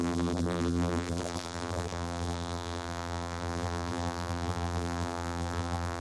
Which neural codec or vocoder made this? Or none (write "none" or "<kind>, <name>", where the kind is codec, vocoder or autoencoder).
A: vocoder, BigVGAN v2